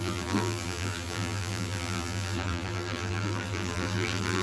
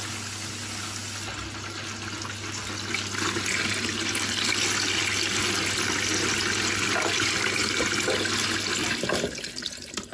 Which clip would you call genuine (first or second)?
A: second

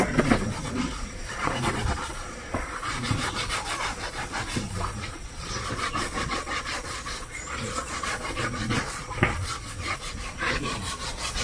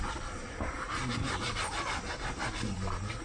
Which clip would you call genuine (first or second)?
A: second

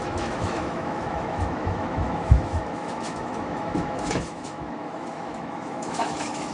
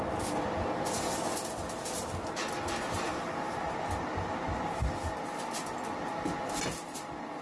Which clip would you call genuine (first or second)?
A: second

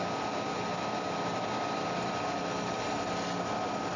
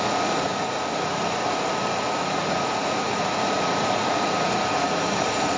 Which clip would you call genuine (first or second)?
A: first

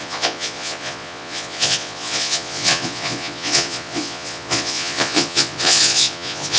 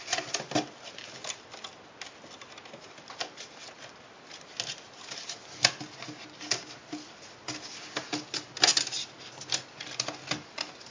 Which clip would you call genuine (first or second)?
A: second